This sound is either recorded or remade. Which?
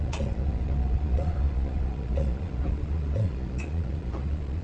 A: remade